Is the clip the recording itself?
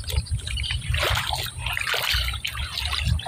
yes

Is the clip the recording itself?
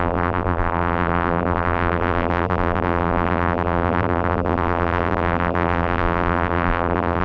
no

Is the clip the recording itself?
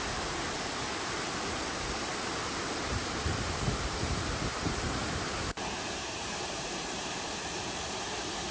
no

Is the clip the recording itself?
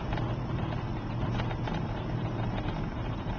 no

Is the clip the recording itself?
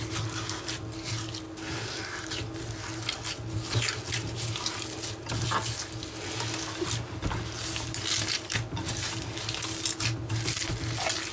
yes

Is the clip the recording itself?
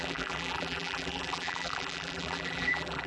no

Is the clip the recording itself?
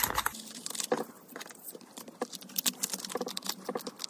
yes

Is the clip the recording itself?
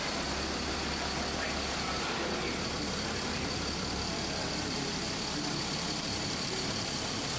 no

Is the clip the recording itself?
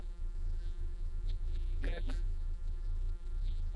no